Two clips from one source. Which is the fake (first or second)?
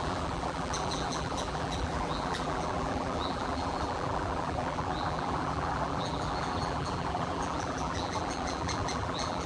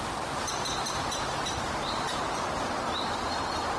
first